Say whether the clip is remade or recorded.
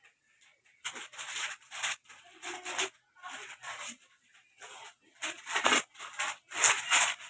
recorded